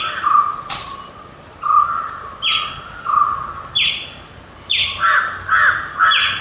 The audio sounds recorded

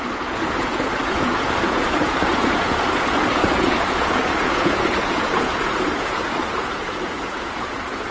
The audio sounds remade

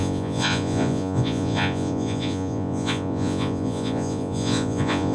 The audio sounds remade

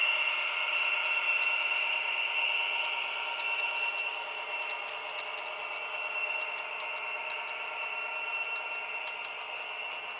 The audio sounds recorded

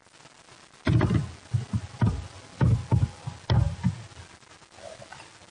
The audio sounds recorded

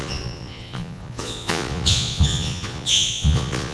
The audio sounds remade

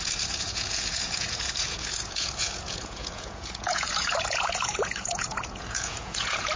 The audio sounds remade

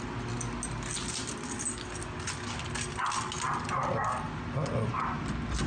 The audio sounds recorded